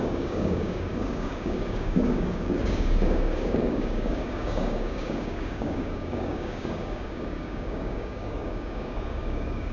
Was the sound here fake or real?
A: fake